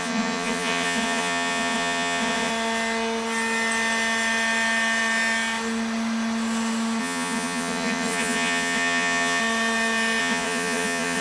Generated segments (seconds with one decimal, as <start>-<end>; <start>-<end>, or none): 0.0-2.5; 7.0-9.4; 10.2-11.2